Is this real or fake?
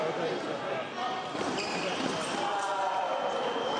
real